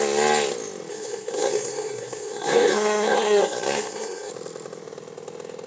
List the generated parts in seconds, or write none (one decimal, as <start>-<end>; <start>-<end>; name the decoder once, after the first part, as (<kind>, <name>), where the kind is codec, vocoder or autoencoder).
0.9-4.3 (codec, SNAC)